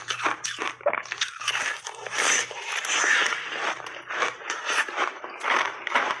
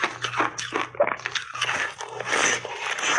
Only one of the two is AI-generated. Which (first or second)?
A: first